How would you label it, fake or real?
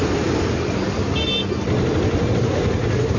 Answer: real